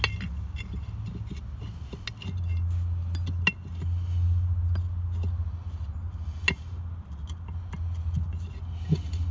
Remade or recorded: recorded